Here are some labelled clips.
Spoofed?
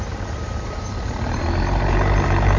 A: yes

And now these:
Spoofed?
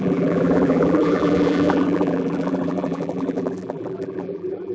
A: yes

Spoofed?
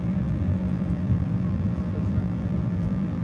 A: yes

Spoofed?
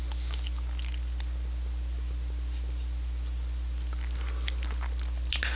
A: no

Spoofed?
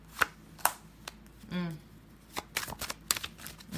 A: no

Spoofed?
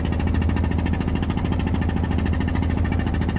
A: no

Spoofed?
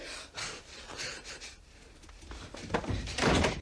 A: no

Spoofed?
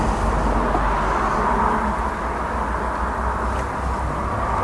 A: no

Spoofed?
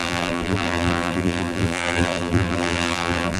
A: yes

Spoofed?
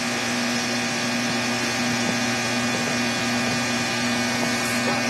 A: no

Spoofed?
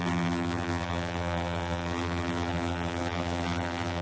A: yes